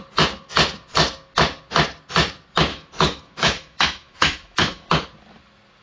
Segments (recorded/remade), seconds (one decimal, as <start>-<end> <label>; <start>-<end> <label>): 0.0-2.7 recorded; 2.7-4.9 remade; 4.9-5.8 recorded